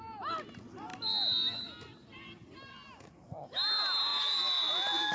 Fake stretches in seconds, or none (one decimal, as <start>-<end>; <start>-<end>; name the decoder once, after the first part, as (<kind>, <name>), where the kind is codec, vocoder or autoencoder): none